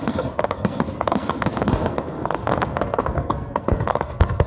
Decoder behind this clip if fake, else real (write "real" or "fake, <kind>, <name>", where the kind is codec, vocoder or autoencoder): fake, codec, SNAC